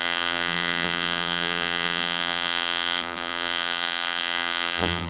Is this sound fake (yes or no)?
yes